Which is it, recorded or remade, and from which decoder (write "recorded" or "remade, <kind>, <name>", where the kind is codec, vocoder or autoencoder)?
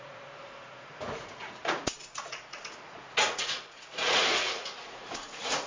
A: remade, vocoder, Vocos